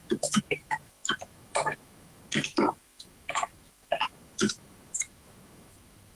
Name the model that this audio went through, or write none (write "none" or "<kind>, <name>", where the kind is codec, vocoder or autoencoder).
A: autoencoder, DAC-VAE